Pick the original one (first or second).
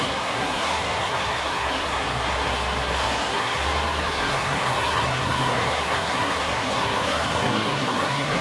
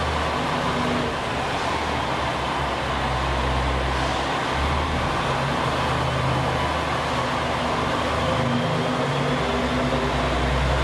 second